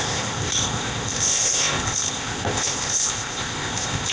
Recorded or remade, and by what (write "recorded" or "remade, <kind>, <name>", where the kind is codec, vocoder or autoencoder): remade, codec, ZipCodec